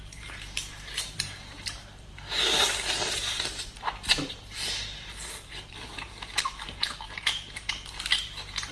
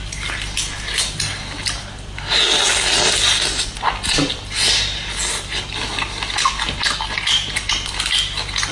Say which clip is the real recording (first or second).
second